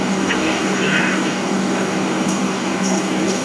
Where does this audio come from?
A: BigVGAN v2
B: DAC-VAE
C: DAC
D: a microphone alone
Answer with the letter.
C